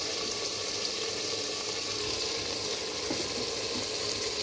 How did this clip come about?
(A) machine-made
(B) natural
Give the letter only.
B